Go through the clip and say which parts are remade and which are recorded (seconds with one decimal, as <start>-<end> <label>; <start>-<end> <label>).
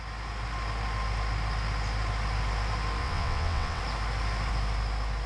0.0-3.0 recorded; 3.0-3.8 remade; 3.8-5.3 recorded